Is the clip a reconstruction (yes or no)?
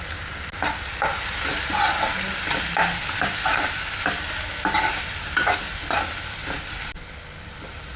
no